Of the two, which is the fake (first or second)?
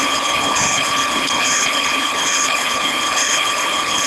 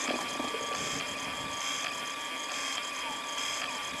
first